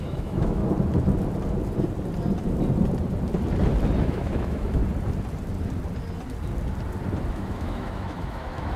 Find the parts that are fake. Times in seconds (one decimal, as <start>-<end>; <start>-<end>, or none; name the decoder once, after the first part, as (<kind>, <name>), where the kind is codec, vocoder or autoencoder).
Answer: 0.0-0.6 (autoencoder, DAC-VAE); 4.0-4.8; 7.3-8.8